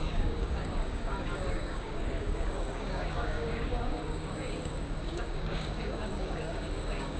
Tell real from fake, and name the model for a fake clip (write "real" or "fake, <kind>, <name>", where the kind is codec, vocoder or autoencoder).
fake, codec, DAC